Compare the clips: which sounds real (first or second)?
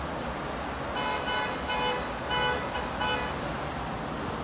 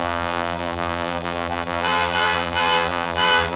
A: first